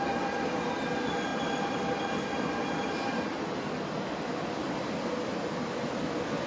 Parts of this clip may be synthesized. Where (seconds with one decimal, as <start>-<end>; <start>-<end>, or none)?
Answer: none